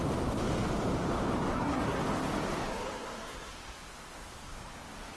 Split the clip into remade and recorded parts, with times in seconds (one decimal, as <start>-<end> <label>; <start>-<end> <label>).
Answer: 0.0-1.5 recorded; 1.5-2.0 remade; 2.0-2.7 recorded; 2.7-3.5 remade; 3.5-5.2 recorded